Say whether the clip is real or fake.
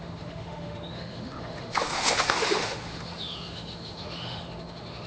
fake